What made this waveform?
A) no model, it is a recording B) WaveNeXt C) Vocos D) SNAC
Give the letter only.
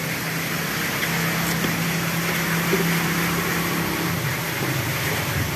A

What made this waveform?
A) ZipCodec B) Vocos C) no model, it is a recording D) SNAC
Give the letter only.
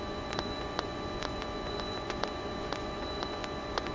B